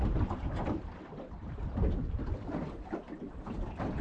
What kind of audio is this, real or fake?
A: real